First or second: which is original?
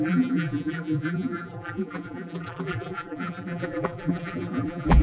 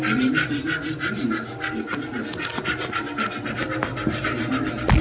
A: second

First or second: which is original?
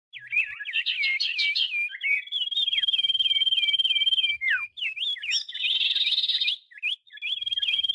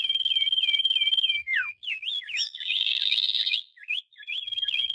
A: first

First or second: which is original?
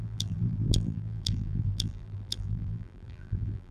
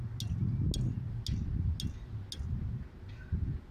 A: second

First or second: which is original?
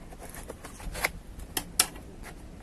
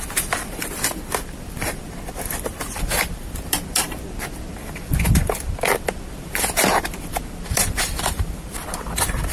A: first